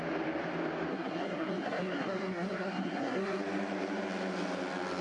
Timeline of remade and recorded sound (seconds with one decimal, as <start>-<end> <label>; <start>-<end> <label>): 0.0-0.9 recorded; 0.9-3.4 remade; 3.4-5.0 recorded